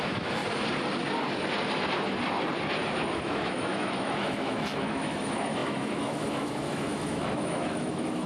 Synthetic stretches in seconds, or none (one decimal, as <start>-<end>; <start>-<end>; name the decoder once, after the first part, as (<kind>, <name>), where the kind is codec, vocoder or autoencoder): 0.0-0.4 (autoencoder, DAC-VAE); 3.2-8.3